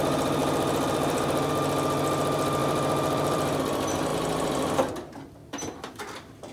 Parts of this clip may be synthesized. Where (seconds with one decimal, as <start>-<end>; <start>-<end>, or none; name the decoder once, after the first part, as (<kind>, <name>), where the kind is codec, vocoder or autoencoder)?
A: 0.4-1.5 (vocoder, BigVGAN v2); 2.6-3.6; 4.1-4.9; 5.4-5.9